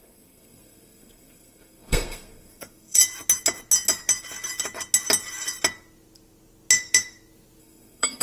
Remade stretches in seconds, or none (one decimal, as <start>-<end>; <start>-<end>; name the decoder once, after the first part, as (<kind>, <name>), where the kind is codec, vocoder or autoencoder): 0.0-3.0 (codec, SNAC); 7.6-8.2